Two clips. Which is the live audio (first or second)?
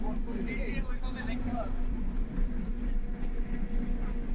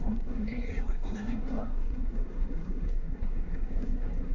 first